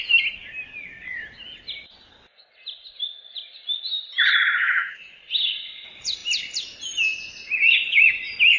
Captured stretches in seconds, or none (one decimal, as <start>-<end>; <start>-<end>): 0.0-4.6; 5.2-8.6